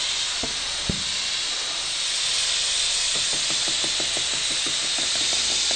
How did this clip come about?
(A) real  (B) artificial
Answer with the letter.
A